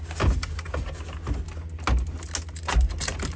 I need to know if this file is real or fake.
real